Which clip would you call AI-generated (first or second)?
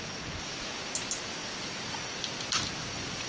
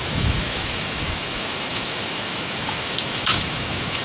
second